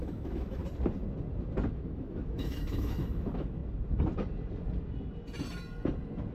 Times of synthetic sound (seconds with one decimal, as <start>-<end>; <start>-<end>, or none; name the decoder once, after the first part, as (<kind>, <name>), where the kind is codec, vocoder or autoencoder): 0.0-0.6 (autoencoder, DAC-VAE); 1.7-3.6